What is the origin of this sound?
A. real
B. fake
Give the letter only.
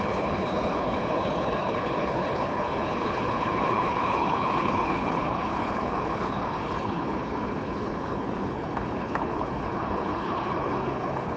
B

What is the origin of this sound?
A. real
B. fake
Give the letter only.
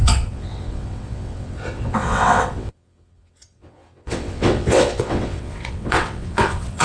B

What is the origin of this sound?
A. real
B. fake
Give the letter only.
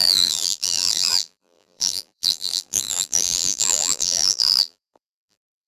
B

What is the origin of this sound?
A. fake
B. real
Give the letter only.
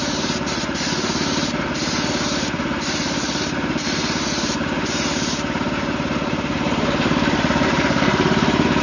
A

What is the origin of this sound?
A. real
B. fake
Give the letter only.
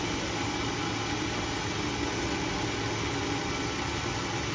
A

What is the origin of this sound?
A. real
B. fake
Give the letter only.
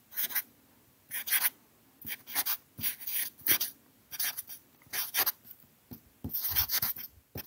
A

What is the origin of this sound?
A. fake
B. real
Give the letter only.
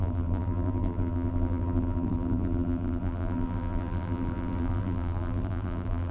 A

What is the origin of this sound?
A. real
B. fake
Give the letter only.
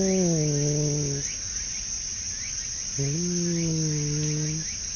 A